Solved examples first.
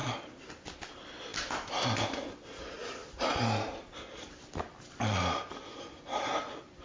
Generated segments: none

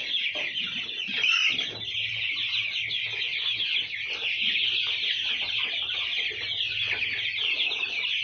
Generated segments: none